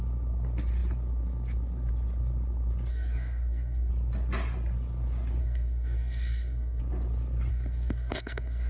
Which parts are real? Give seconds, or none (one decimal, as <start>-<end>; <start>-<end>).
0.0-2.9; 3.9-5.4; 6.8-7.5